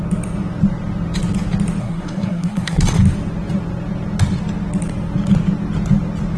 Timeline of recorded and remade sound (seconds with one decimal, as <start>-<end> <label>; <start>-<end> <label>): 0.0-1.8 recorded; 1.8-2.8 remade; 2.8-6.4 recorded